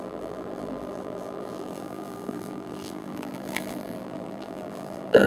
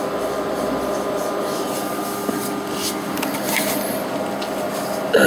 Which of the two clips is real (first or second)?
second